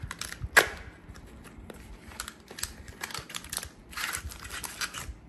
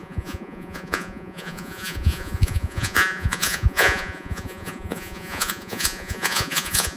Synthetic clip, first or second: second